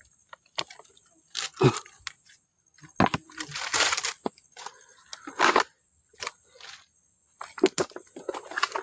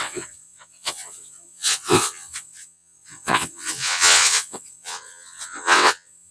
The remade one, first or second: second